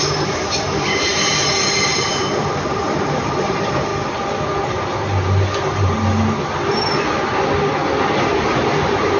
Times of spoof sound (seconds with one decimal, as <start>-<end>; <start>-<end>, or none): 0.0-3.9; 8.2-9.2